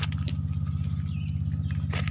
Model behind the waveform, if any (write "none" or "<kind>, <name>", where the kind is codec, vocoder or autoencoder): none